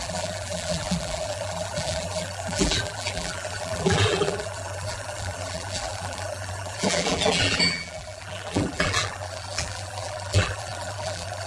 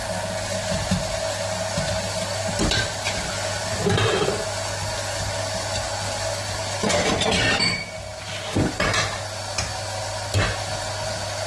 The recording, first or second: second